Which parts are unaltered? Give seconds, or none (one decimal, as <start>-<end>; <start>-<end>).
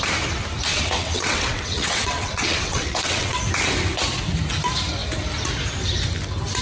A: 0.0-0.7; 3.4-6.6